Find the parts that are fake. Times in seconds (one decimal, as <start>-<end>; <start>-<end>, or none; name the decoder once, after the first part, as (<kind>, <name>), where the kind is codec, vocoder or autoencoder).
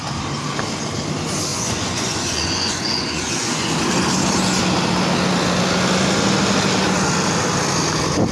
1.5-3.7 (vocoder, Vocos)